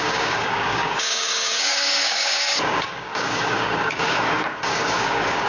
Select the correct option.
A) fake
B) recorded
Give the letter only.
A